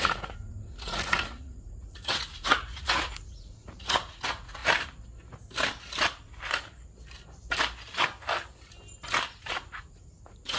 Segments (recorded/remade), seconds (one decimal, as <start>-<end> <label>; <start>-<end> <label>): 0.0-4.6 remade; 4.6-9.4 recorded; 9.4-10.6 remade

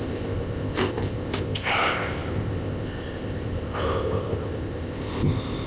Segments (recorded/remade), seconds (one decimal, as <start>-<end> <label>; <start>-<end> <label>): 0.0-5.7 remade

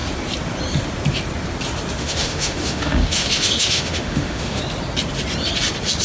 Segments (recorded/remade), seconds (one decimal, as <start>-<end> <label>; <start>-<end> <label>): 0.0-2.0 recorded; 2.0-4.6 remade; 4.6-6.0 recorded

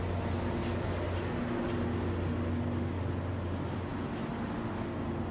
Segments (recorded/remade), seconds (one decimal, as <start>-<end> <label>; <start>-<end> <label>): 0.0-5.3 recorded

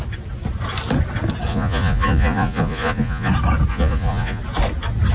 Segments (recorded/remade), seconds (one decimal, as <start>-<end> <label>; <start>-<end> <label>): 0.0-1.5 recorded; 1.5-3.3 remade; 3.3-3.7 recorded; 3.7-4.4 remade; 4.4-5.1 recorded